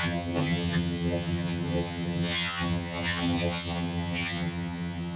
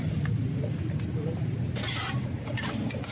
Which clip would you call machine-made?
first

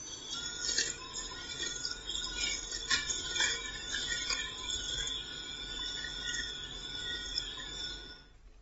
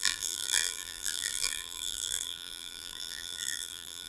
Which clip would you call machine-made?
second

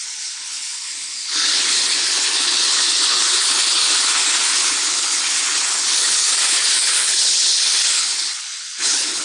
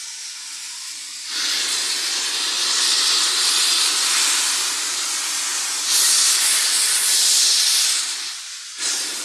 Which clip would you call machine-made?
first